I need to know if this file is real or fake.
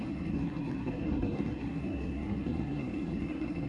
fake